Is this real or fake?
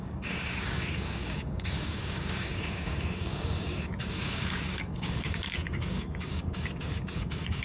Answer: fake